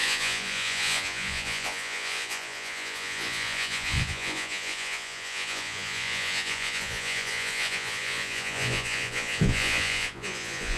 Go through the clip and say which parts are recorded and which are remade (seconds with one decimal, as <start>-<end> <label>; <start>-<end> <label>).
0.0-10.8 remade